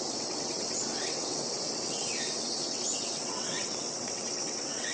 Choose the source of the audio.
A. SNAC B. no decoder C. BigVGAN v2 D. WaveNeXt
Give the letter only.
D